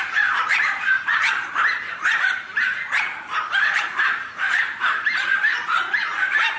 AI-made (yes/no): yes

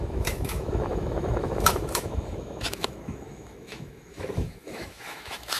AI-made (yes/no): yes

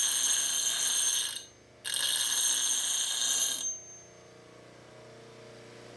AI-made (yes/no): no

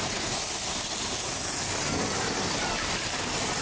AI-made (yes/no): yes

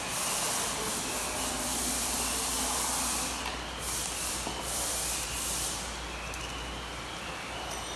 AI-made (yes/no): no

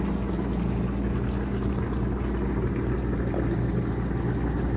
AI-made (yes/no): no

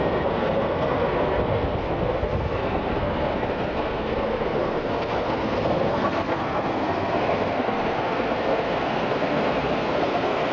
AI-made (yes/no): yes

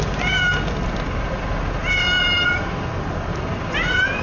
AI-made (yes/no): no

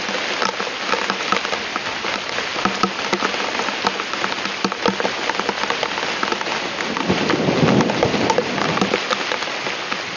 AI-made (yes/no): no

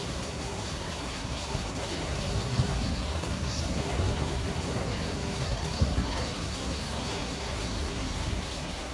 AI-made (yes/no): yes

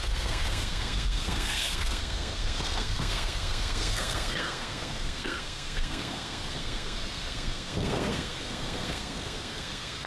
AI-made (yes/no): yes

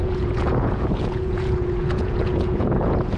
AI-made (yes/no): yes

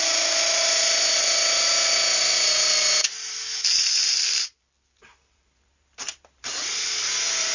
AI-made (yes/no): no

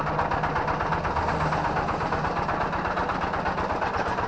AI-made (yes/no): no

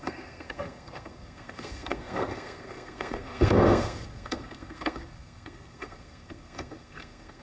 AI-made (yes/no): yes